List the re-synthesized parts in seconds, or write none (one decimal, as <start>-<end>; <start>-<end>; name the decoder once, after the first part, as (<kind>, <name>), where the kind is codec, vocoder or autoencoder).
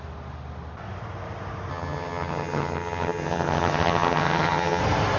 1.7-4.8 (vocoder, HiFi-GAN)